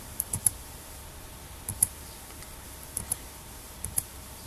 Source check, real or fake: fake